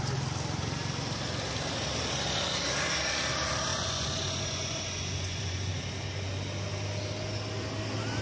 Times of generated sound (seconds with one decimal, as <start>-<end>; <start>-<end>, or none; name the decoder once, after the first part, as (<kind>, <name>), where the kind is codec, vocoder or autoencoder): 3.7-5.8 (vocoder, Vocos)